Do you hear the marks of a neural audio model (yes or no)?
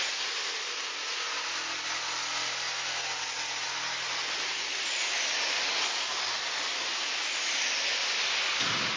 no